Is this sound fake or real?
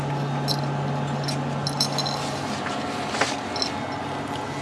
real